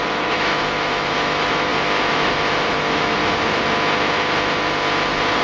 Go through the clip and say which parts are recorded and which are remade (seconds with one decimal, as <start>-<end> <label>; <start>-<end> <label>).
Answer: 0.0-3.2 remade; 3.2-5.4 recorded